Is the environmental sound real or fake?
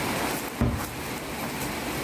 real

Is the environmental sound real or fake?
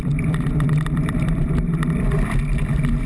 fake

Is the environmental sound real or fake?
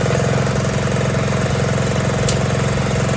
real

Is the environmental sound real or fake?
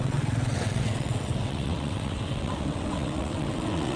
fake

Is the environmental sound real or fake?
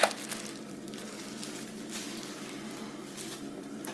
real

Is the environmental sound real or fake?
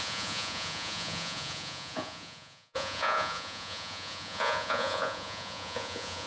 fake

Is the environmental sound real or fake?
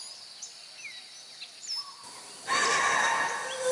real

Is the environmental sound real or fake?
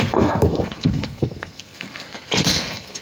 fake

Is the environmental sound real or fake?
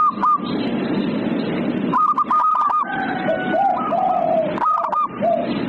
real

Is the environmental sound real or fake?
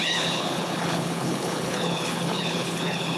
fake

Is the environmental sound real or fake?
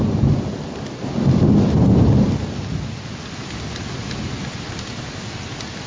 real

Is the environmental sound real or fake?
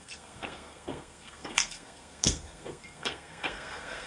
fake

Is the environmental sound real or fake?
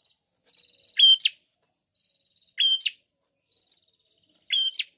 real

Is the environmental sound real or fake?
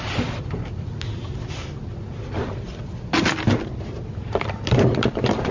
real